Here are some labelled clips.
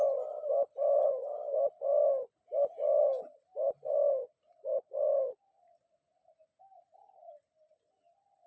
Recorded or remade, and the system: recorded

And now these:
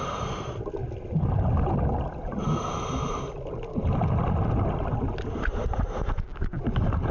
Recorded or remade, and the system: recorded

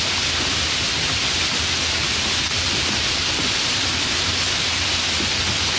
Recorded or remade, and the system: recorded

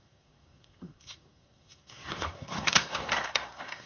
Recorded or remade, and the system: remade, codec, SNAC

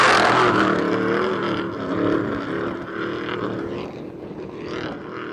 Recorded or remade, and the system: recorded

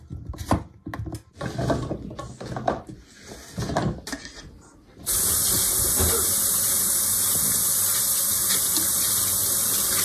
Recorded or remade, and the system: recorded